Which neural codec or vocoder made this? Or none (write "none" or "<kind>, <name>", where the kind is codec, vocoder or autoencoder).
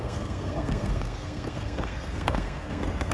codec, SNAC